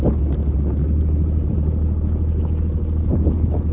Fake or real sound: real